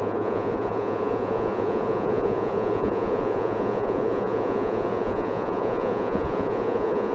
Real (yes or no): no